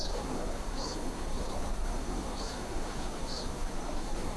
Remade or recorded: remade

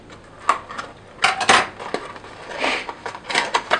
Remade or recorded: recorded